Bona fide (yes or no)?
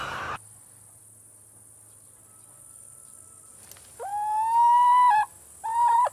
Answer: yes